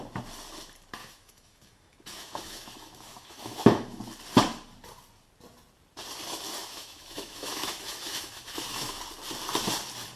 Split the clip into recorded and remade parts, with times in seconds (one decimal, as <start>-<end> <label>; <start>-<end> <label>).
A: 0.0-1.0 recorded; 1.0-4.0 remade; 4.0-6.6 recorded; 6.6-9.0 remade; 9.0-10.2 recorded